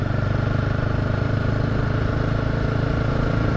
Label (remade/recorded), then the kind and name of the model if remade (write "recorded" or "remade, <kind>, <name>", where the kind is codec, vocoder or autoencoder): recorded